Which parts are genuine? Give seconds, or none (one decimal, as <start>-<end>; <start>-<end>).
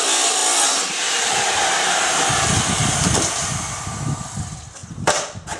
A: 0.0-0.4; 3.8-4.8